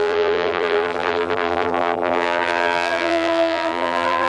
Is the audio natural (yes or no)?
no